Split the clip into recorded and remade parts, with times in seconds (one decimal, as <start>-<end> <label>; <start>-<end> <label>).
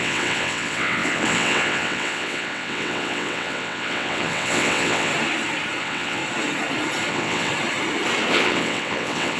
0.0-5.1 remade; 5.1-5.8 recorded; 5.8-6.2 remade; 6.2-7.1 recorded; 7.1-7.5 remade; 7.5-8.3 recorded; 8.3-9.4 remade